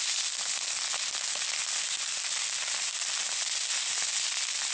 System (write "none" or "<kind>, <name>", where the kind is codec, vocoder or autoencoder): none